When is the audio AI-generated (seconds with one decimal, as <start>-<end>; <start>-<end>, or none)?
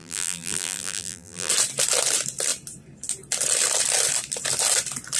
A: 0.0-1.5